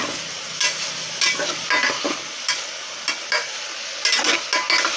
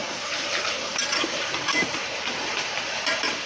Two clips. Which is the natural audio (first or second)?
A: first